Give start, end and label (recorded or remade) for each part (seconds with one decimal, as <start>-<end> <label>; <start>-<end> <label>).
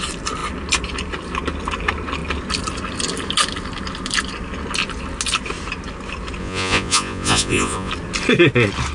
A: 0.0-6.4 recorded; 6.4-7.9 remade; 7.9-8.9 recorded